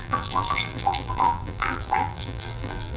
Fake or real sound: fake